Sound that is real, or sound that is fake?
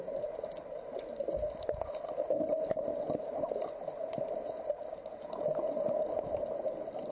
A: real